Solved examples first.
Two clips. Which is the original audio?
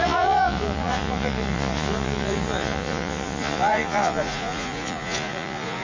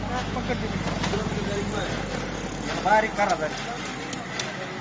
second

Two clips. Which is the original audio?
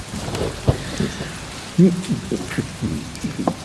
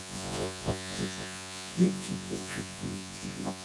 first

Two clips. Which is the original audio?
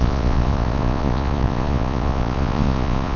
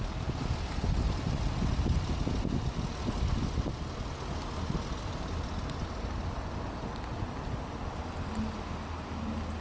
second